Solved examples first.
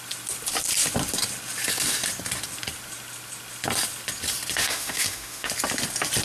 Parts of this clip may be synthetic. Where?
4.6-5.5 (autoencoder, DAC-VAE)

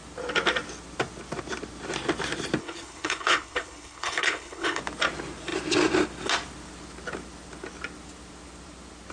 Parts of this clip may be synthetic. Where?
2.6-4.8 (codec, HILCodec)

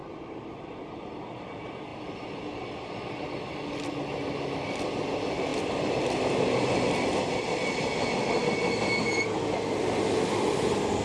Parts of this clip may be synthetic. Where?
0.0-0.8 (vocoder, BigVGAN v2); 1.9-3.6; 5.5-7.5

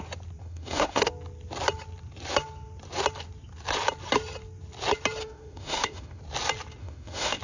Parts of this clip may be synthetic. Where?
0.4-1.1 (autoencoder, DAC-VAE); 5.2-6.2; 6.8-7.4

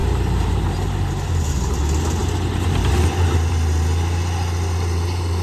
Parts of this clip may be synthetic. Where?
0.0-1.3 (vocoder, BigVGAN v2)